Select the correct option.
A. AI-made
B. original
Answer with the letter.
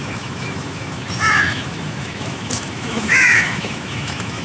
A